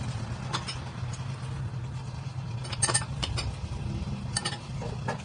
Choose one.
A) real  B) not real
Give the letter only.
A